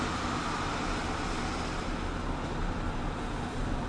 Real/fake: real